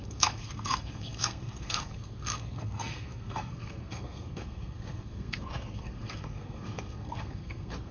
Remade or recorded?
remade